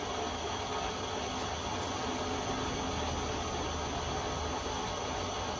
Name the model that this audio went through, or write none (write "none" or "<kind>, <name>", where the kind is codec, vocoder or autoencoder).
none